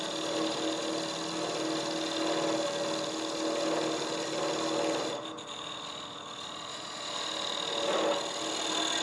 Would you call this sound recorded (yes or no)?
yes